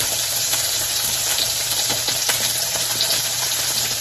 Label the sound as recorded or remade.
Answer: remade